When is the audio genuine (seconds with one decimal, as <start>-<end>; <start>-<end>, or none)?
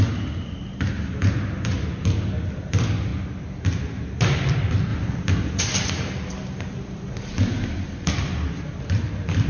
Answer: 0.0-9.5